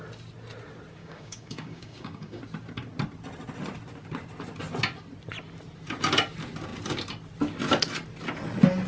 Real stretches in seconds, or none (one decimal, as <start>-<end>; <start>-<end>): 0.0-1.0; 2.4-8.9

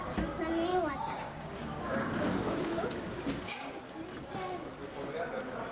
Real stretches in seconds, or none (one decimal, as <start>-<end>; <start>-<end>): 0.0-0.7; 3.8-5.7

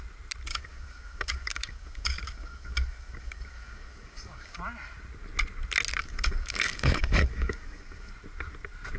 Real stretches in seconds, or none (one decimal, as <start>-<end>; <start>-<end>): 0.0-0.5; 4.6-6.0; 8.1-9.0

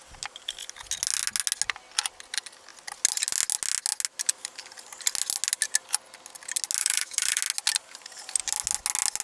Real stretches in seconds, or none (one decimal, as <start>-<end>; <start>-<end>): 0.0-6.8; 7.4-9.2

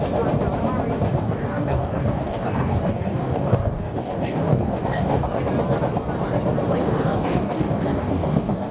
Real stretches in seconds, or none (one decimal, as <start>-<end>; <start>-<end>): 0.0-1.2; 5.4-6.8

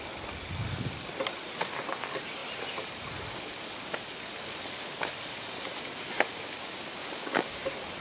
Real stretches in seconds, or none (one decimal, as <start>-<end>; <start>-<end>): 0.0-7.0; 7.6-8.0